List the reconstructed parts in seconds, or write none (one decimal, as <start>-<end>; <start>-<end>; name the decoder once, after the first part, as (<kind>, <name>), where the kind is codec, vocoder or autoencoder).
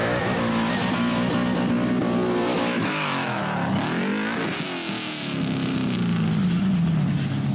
0.0-0.7 (autoencoder, DAC-VAE); 2.5-3.4